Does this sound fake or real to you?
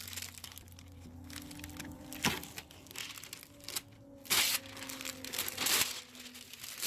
real